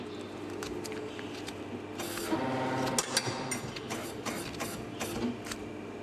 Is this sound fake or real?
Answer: real